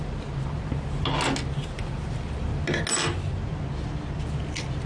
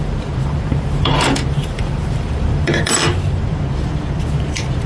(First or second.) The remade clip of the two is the second